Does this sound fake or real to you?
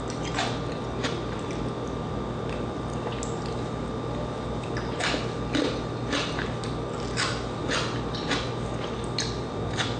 real